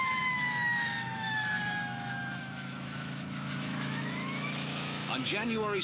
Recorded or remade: remade